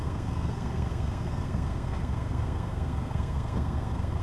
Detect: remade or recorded remade